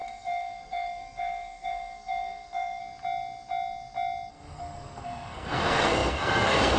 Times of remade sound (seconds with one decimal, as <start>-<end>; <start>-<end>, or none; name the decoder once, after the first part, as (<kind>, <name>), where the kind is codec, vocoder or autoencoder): 0.0-2.8 (codec, SNAC); 4.3-6.8